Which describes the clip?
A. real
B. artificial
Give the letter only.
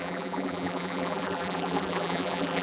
B